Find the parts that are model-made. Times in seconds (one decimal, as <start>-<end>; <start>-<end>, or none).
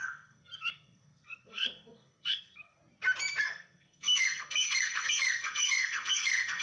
0.0-2.8; 3.4-6.6